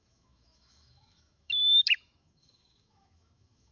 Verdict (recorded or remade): remade